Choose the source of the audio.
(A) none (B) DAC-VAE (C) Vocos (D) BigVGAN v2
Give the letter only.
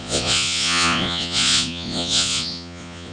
C